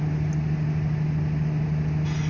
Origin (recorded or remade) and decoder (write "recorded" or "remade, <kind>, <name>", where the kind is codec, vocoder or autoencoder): recorded